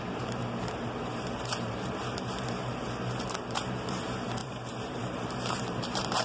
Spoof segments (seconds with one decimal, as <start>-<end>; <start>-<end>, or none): 0.0-6.2